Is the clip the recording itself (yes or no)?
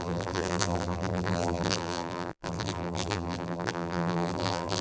no